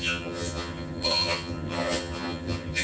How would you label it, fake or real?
fake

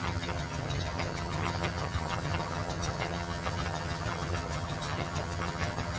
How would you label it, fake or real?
fake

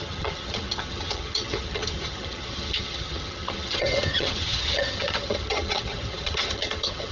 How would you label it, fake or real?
fake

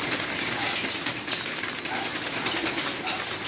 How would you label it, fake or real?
real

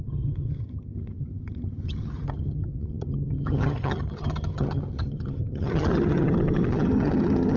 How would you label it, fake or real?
fake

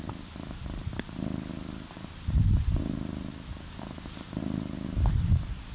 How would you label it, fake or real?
real